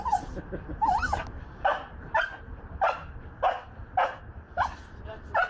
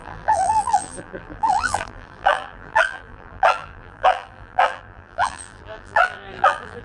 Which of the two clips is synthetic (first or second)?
second